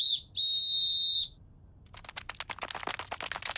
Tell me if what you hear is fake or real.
real